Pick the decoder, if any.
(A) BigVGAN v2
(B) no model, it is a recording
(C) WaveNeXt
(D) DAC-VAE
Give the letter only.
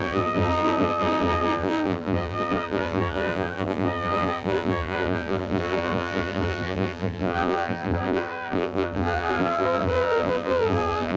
A